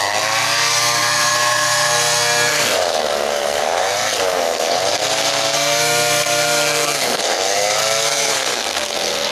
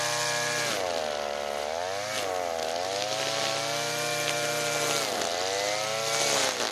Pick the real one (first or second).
second